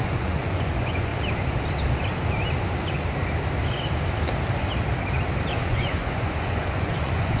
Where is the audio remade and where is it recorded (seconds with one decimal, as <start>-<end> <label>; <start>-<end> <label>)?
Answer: 0.0-1.1 remade; 1.1-5.5 recorded; 5.5-7.4 remade